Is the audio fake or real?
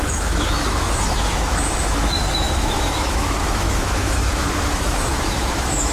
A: fake